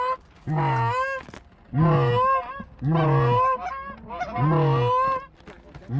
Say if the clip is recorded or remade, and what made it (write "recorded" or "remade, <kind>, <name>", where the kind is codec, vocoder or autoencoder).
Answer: recorded